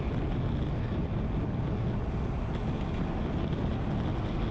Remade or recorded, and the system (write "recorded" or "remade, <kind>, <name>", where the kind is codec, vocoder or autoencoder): recorded